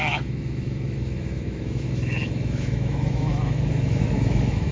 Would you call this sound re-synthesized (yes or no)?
yes